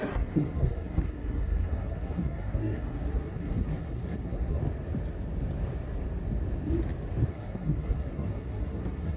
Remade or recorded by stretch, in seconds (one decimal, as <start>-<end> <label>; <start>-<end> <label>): 0.0-4.6 remade; 4.6-7.3 recorded; 7.3-9.2 remade